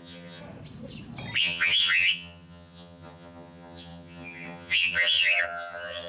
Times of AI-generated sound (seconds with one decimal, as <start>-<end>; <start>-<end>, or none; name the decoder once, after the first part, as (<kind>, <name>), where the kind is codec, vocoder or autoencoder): 0.0-0.4 (vocoder, HiFi-GAN); 1.4-6.1

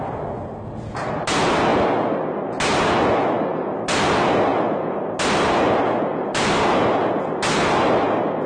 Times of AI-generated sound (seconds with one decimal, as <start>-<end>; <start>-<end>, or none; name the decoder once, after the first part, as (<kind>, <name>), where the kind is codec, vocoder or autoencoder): none

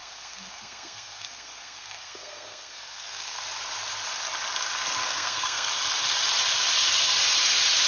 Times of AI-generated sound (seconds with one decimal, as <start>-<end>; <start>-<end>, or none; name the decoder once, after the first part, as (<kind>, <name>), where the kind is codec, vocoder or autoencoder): 0.0-3.4 (codec, SNAC); 5.0-5.7

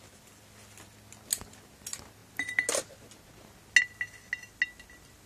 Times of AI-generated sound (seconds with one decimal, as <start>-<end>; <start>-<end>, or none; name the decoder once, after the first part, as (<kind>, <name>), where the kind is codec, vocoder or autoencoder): none

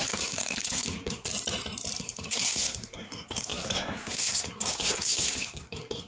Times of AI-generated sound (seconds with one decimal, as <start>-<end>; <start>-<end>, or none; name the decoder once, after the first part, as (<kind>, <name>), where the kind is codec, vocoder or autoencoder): 0.0-1.3 (codec, SNAC); 2.0-6.1

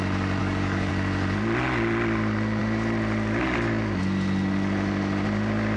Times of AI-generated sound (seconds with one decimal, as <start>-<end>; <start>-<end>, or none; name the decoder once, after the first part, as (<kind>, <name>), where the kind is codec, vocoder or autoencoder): 0.4-0.9 (codec, DAC)